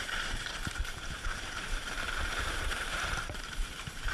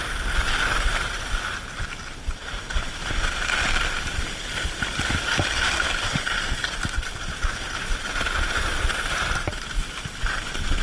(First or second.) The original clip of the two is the second